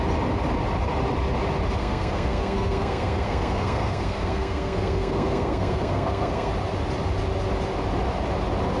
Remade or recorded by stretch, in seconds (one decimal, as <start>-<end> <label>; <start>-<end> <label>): 0.0-1.8 recorded; 1.8-6.5 remade; 6.5-8.8 recorded